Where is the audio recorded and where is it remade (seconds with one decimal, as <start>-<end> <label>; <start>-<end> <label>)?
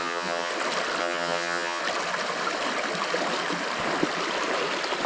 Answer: 0.0-0.5 remade; 0.5-1.0 recorded; 1.0-1.8 remade; 1.8-5.1 recorded